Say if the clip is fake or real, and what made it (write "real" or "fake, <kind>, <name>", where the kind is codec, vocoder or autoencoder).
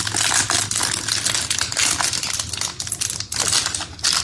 real